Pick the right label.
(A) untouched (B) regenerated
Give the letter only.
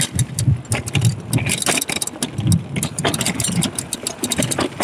A